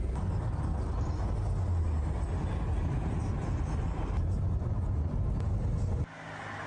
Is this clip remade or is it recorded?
recorded